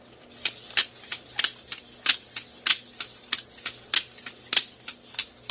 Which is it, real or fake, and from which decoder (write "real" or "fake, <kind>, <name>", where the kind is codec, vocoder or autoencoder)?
real